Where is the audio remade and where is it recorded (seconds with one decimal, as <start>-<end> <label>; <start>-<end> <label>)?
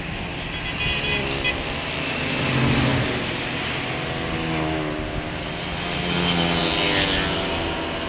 0.0-1.2 recorded; 1.2-1.9 remade; 1.9-8.1 recorded